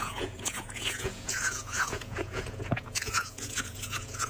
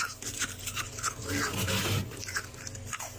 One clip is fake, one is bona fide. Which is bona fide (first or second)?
second